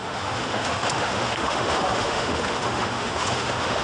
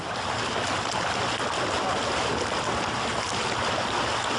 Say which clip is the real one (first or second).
second